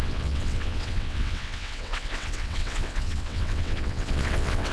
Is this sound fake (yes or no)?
yes